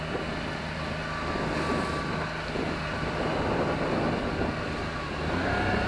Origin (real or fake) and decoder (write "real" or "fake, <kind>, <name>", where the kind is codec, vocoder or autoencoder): real